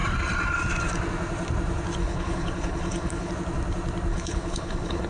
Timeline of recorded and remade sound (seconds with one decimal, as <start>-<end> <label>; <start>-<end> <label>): 0.0-2.0 recorded; 2.0-3.3 remade; 3.3-4.1 recorded; 4.1-5.1 remade